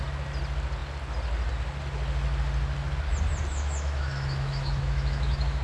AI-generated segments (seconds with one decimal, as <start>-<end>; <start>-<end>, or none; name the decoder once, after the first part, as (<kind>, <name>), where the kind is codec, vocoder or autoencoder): 3.5-5.6 (autoencoder, DAC-VAE)